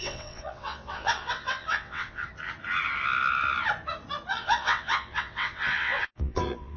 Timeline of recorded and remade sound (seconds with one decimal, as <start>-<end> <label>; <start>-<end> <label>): 0.0-2.2 remade; 2.2-4.3 recorded; 4.3-6.8 remade